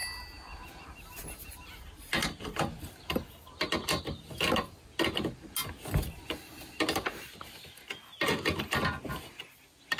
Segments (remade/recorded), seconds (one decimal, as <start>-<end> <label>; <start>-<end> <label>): 0.0-10.0 recorded